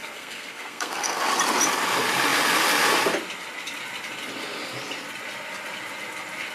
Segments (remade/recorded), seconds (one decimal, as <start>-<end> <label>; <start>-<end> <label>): 0.0-1.2 remade; 1.2-6.5 recorded